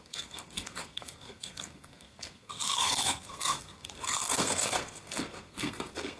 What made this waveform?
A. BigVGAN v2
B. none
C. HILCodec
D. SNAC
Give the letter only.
D